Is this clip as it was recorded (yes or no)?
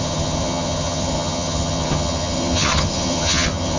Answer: no